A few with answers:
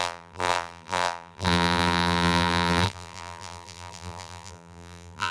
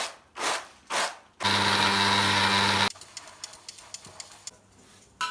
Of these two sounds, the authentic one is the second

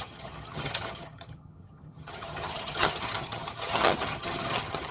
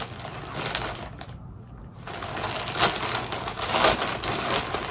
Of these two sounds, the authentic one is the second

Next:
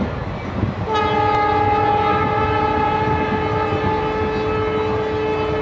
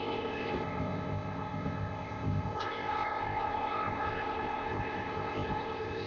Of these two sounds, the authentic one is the first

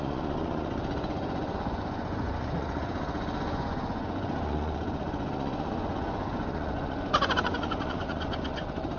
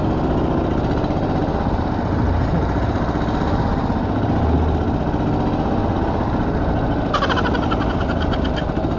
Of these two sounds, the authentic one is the second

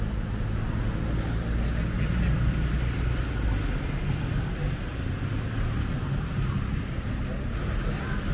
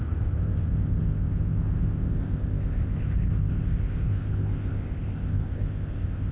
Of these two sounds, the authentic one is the first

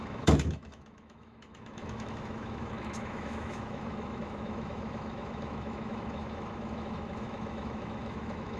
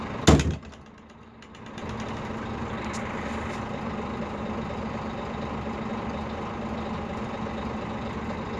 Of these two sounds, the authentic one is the second